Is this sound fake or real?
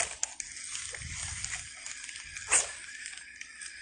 real